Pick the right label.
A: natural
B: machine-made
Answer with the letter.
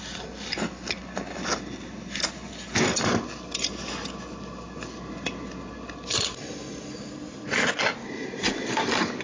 A